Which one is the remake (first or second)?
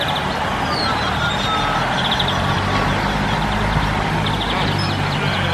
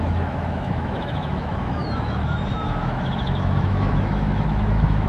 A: second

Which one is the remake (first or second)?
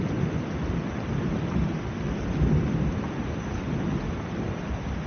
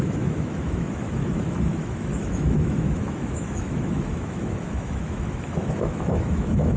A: second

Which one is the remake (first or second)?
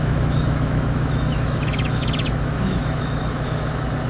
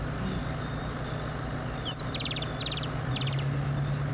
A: first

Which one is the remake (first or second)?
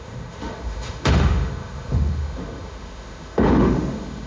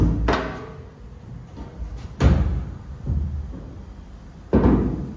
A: first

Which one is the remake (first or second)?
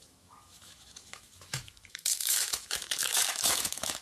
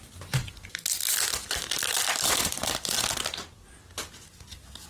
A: first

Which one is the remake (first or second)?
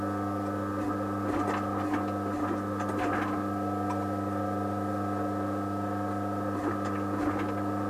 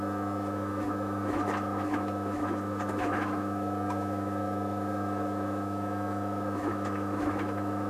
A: second